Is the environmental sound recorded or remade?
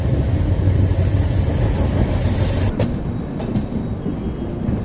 recorded